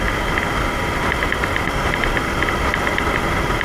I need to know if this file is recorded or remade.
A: recorded